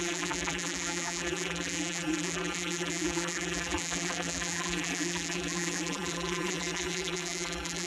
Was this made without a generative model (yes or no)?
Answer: no